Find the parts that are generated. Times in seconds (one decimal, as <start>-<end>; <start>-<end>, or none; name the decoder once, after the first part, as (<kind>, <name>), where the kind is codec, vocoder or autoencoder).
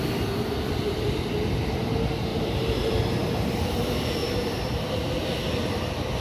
2.3-3.7 (vocoder, BigVGAN v2); 4.2-4.8